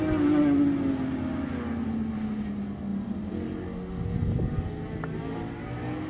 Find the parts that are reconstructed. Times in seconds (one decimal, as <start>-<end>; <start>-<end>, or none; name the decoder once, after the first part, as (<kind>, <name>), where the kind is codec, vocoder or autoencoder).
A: none